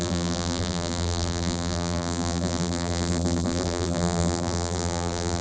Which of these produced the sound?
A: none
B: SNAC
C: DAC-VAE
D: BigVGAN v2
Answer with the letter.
D